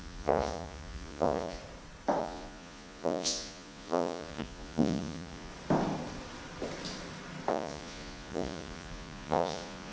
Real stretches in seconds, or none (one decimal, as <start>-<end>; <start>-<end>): 1.6-2.2; 5.5-7.5

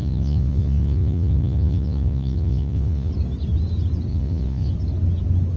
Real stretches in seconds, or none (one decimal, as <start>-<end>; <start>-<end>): 3.1-4.1; 4.7-5.6

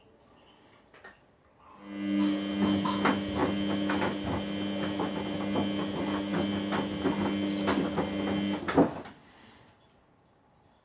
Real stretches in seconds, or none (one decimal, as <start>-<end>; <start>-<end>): 0.0-10.8

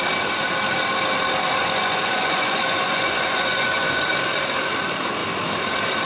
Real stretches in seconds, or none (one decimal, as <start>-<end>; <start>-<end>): 0.0-1.6; 4.0-6.0

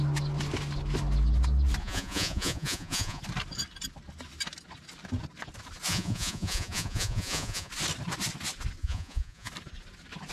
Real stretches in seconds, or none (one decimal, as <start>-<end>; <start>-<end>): 0.0-1.8; 3.2-5.9; 7.7-8.8; 9.5-10.3

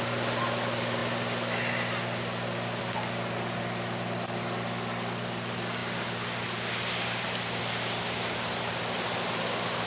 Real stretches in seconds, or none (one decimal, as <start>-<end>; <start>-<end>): 0.0-9.9